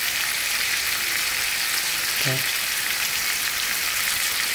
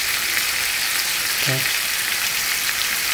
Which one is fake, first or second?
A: second